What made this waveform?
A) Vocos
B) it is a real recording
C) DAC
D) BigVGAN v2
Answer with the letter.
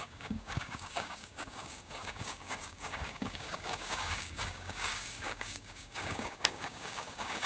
C